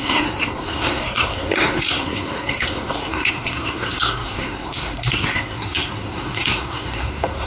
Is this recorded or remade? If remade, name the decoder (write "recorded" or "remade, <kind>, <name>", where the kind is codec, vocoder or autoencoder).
remade, codec, SNAC